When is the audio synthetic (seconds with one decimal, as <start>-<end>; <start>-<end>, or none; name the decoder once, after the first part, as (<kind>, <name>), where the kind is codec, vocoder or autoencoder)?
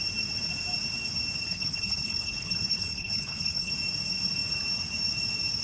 1.5-3.7 (codec, HILCodec)